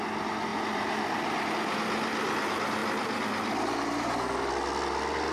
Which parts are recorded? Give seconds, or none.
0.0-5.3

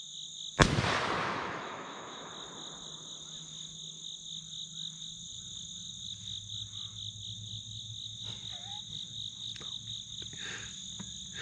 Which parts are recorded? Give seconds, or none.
0.0-1.2; 2.3-11.4